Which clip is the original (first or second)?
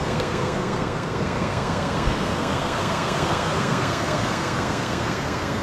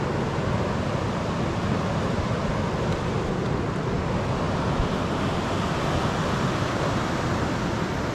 second